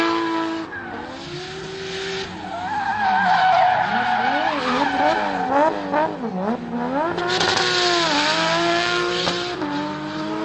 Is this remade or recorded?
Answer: recorded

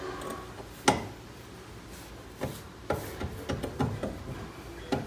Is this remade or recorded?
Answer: recorded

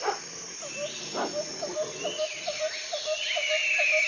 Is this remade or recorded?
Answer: recorded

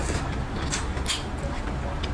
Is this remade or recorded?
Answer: recorded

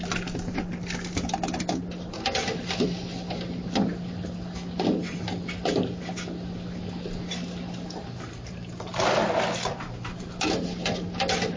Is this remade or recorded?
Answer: recorded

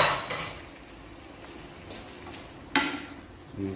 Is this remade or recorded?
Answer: recorded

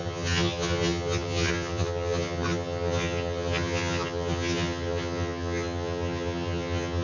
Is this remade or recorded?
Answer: remade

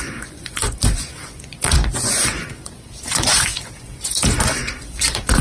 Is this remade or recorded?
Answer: remade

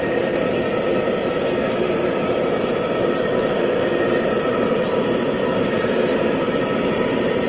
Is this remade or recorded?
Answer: remade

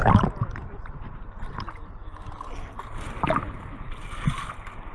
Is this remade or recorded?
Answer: recorded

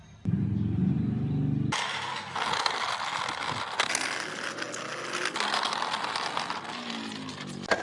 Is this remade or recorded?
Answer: recorded